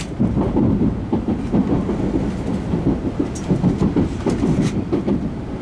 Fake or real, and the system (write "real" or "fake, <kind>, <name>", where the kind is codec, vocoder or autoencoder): real